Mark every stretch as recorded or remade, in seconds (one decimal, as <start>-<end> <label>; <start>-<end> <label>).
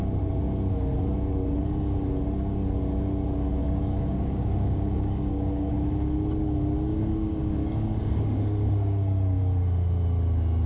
0.0-3.6 recorded; 3.6-5.7 remade; 5.7-6.9 recorded; 6.9-9.4 remade; 9.4-10.7 recorded